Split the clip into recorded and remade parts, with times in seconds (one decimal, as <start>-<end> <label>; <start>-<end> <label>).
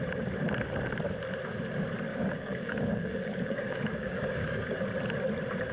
0.0-2.1 recorded; 2.1-4.8 remade; 4.8-5.7 recorded